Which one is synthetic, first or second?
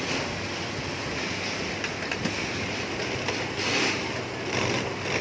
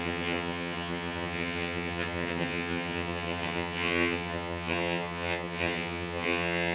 second